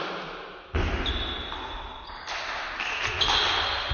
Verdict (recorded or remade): recorded